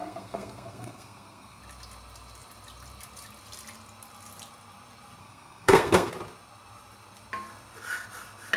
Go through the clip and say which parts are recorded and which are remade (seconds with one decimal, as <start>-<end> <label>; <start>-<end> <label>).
0.0-1.6 remade; 1.6-5.2 recorded; 5.2-6.1 remade; 6.1-8.6 recorded